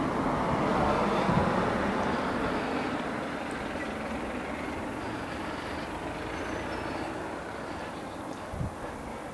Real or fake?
real